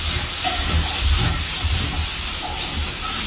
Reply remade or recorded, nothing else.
recorded